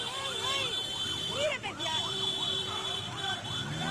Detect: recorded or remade remade